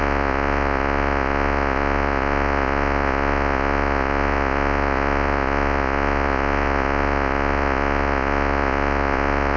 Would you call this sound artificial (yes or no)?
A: yes